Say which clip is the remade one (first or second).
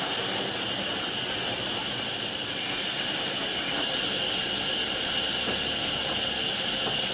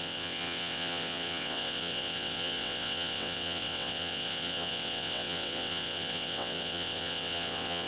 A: second